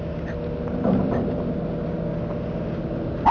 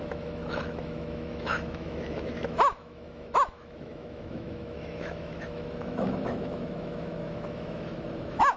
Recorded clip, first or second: first